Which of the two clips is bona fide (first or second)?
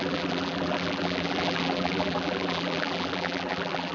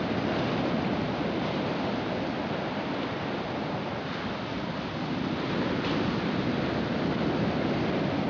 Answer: second